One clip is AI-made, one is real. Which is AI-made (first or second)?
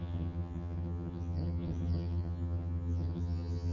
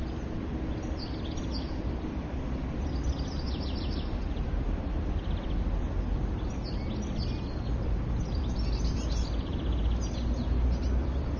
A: first